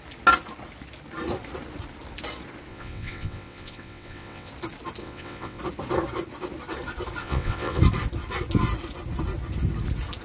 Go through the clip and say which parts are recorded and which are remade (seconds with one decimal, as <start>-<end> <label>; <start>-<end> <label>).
0.0-2.7 recorded; 2.7-4.5 remade; 4.5-5.0 recorded; 5.0-5.6 remade; 5.6-7.2 recorded; 7.2-7.8 remade; 7.8-10.2 recorded

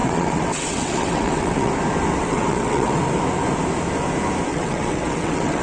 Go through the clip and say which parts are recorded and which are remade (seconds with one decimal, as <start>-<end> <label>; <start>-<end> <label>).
0.0-1.7 remade; 1.7-2.2 recorded; 2.2-3.0 remade; 3.0-4.5 recorded; 4.5-5.6 remade

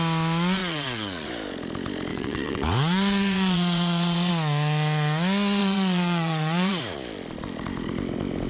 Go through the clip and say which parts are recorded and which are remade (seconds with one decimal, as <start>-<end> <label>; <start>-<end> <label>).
0.0-0.6 recorded; 0.6-1.3 remade; 1.3-2.1 recorded; 2.1-4.3 remade; 4.3-5.6 recorded; 5.6-6.8 remade; 6.8-8.5 recorded

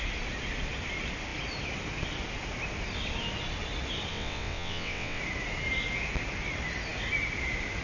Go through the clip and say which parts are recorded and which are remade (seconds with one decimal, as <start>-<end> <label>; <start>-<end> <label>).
0.0-4.1 recorded; 4.1-5.2 remade; 5.2-7.8 recorded